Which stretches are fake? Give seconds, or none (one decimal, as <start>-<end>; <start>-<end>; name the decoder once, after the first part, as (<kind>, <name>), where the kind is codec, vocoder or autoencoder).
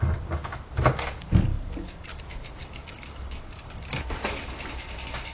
1.5-2.2 (codec, DAC); 2.6-3.9